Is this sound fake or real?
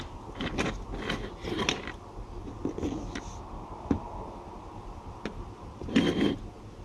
real